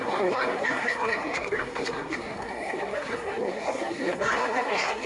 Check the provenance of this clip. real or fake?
fake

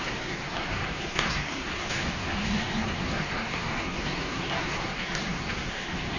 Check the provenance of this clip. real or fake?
fake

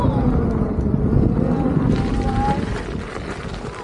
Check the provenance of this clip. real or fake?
real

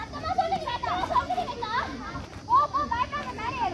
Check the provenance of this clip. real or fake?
real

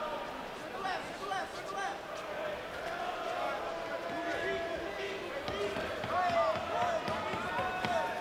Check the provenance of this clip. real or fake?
real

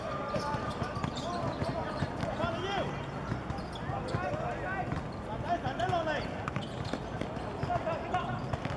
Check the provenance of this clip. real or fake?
real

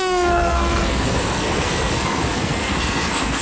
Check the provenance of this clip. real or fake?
fake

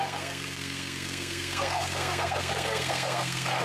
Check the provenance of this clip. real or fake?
fake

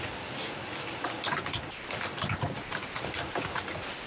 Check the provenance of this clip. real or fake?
real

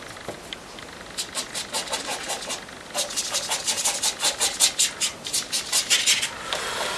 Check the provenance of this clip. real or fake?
real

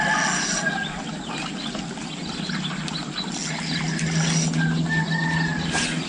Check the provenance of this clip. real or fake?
real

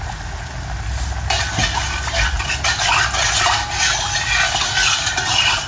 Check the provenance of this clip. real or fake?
real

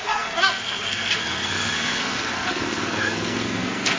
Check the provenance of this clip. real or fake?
fake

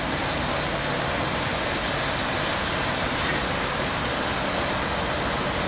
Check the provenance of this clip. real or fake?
real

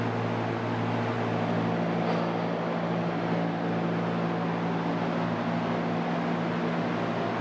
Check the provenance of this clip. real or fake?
real